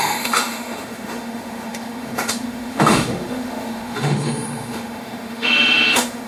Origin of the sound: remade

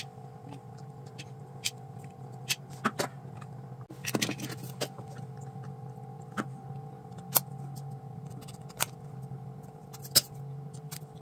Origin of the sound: recorded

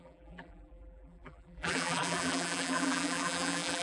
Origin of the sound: remade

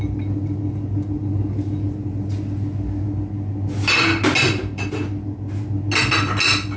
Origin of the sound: recorded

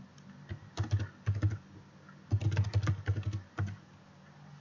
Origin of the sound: recorded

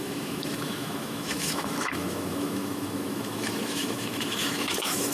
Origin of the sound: remade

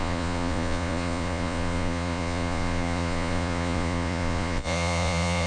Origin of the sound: remade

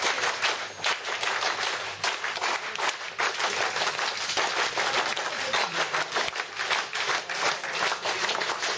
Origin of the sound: recorded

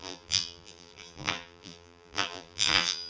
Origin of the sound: remade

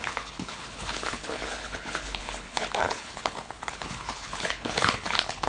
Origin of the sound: remade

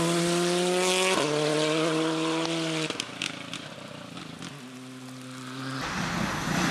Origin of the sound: recorded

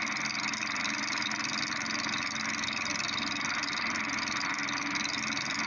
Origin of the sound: recorded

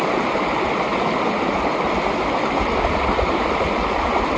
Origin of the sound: recorded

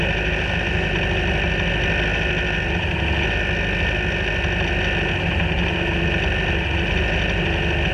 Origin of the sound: recorded